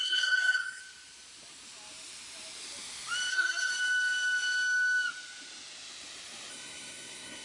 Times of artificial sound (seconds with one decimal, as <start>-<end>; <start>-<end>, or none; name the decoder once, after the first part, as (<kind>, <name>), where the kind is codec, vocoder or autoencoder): 0.0-0.8 (codec, SNAC); 3.3-3.7; 6.5-7.4

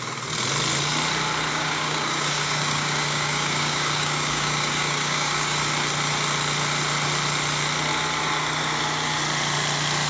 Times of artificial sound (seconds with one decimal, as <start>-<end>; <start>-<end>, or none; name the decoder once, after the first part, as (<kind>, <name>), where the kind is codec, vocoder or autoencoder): 1.5-5.7 (codec, DAC)

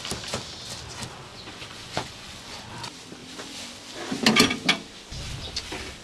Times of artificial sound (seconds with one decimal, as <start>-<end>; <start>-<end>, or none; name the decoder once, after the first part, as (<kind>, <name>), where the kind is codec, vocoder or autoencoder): 1.3-2.7 (vocoder, Vocos)

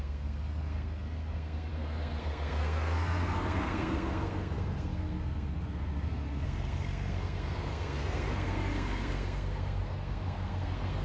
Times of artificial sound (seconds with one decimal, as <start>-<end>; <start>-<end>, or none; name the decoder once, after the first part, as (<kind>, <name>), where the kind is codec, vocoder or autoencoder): 0.0-11.0 (codec, SNAC)

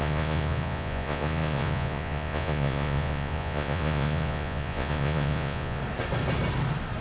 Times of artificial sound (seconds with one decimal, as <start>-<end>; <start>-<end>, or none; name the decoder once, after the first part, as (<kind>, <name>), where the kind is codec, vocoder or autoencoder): 0.0-5.8 (vocoder, Vocos)